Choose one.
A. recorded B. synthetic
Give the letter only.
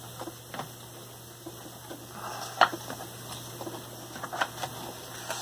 A